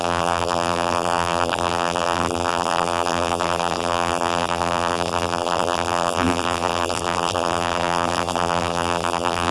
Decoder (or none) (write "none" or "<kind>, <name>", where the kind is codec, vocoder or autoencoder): vocoder, BigVGAN v2